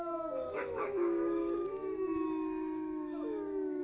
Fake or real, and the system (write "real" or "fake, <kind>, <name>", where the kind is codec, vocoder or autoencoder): fake, autoencoder, DAC-VAE